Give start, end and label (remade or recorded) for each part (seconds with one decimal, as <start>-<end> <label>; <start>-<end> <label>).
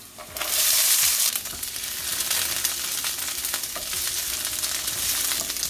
0.0-0.4 recorded; 0.4-1.9 remade; 1.9-5.7 recorded